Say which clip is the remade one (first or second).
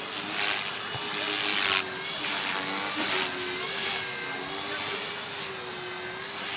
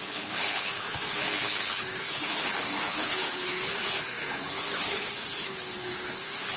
second